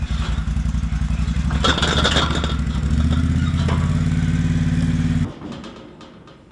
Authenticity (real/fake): real